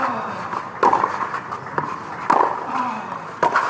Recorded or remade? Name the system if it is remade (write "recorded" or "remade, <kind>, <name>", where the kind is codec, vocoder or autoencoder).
recorded